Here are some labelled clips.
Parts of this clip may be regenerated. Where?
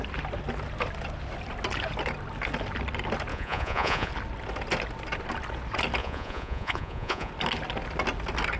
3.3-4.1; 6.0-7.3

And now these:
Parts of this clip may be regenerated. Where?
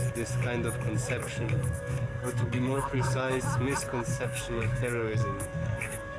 1.2-3.4; 4.1-6.2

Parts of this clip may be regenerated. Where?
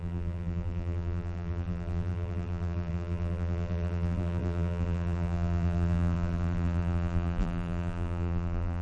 0.0-8.8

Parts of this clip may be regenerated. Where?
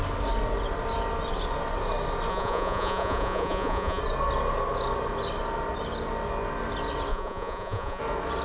2.3-4.0; 7.1-8.0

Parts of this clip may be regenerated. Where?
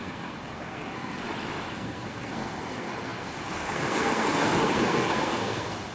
0.0-1.2; 1.7-5.9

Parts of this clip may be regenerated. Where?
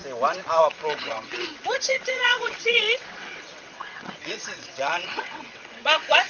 0.6-6.3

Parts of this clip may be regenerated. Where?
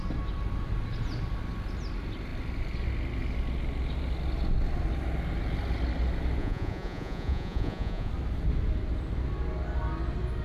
6.4-8.1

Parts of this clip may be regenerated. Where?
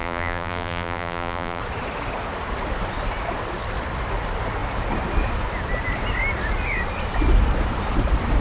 0.0-1.6